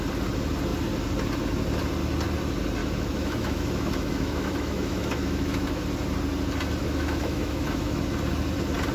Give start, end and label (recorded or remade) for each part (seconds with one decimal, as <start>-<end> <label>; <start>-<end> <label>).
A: 0.0-2.8 recorded; 2.8-5.8 remade; 5.8-6.8 recorded; 6.8-8.0 remade; 8.0-8.9 recorded

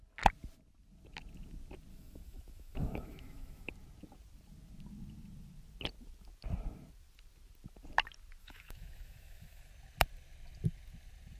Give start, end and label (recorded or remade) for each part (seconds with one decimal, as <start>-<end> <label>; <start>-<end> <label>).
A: 0.0-1.9 recorded; 1.9-3.7 remade; 3.7-8.4 recorded; 8.4-9.7 remade; 9.7-11.4 recorded

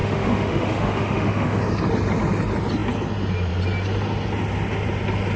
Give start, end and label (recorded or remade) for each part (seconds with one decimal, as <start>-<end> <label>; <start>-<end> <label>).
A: 0.0-1.6 remade; 1.6-5.4 recorded

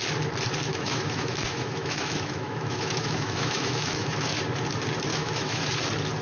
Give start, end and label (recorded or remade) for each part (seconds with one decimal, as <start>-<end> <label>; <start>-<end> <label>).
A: 0.0-0.7 recorded; 0.7-4.4 remade; 4.4-5.1 recorded; 5.1-5.7 remade; 5.7-6.2 recorded